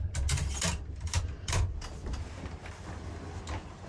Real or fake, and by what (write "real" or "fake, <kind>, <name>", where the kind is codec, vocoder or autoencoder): real